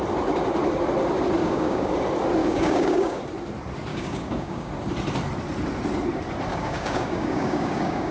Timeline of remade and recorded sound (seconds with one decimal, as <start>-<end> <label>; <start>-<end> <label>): 0.0-1.4 recorded; 1.4-1.9 remade; 1.9-2.4 recorded; 2.4-3.2 remade; 3.2-3.9 recorded; 3.9-4.7 remade; 4.7-6.5 recorded; 6.5-8.1 remade